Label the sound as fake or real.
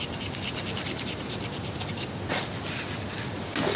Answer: real